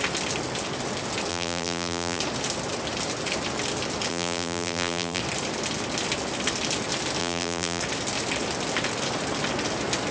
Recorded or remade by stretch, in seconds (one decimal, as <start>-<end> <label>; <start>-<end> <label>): 0.0-1.3 recorded; 1.3-2.2 remade; 2.2-4.1 recorded; 4.1-5.2 remade; 5.2-7.2 recorded; 7.2-7.8 remade; 7.8-10.1 recorded

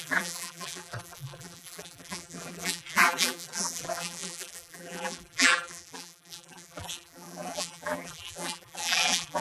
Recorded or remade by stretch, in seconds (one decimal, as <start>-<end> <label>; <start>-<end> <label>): 0.0-9.4 remade

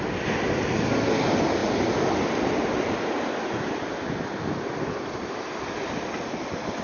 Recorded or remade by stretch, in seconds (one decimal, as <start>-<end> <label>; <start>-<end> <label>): 0.0-6.8 recorded

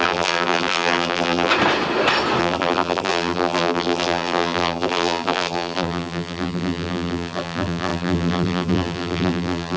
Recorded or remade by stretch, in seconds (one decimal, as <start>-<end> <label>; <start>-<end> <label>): 0.0-1.5 remade; 1.5-2.4 recorded; 2.4-9.8 remade

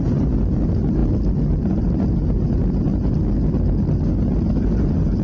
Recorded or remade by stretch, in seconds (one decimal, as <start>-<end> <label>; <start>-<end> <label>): 0.0-5.2 recorded

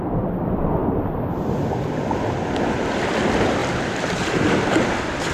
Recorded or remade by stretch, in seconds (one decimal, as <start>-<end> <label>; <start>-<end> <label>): 0.0-3.6 recorded; 3.6-4.8 remade; 4.8-5.3 recorded